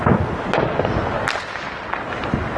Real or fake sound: real